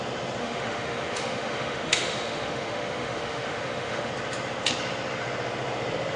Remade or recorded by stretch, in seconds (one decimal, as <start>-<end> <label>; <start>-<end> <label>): 0.0-0.4 recorded; 0.4-4.1 remade; 4.1-6.2 recorded